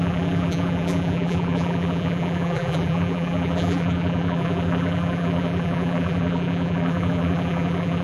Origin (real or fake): fake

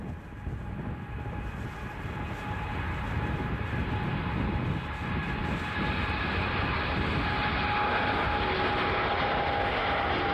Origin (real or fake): real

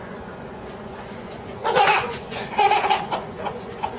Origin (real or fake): fake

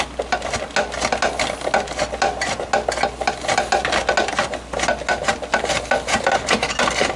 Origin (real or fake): real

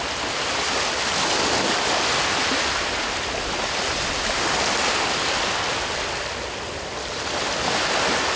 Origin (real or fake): real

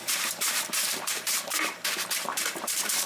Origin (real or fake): fake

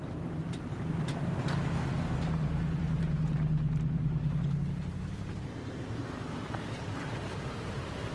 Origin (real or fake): fake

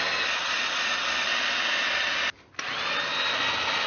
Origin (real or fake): real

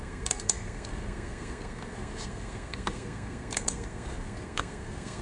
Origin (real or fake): fake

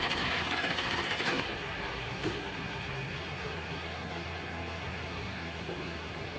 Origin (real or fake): fake